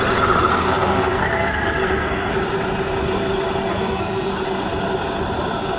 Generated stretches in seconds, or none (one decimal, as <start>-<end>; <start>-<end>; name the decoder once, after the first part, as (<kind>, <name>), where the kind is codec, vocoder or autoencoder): 0.5-2.3 (codec, SNAC); 3.7-4.3